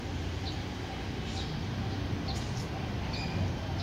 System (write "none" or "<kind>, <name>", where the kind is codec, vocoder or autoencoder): none